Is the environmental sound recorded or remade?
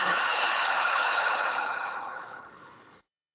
remade